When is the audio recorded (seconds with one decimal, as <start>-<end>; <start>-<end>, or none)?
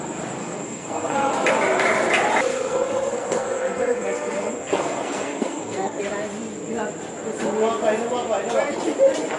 0.0-0.4; 1.3-2.5; 6.0-9.4